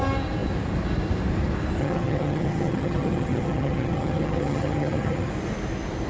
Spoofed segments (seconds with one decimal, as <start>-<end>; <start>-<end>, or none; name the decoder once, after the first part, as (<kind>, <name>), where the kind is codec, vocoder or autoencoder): 1.8-5.3 (vocoder, HiFi-GAN)